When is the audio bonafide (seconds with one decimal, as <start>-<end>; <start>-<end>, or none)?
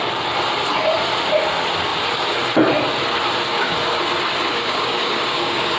0.0-3.5; 4.0-4.5